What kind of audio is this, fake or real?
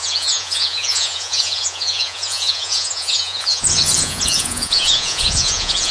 fake